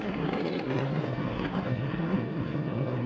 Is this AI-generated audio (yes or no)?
yes